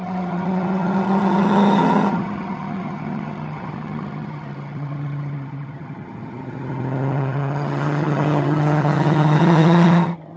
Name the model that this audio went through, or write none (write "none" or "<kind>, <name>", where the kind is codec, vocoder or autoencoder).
vocoder, HiFi-GAN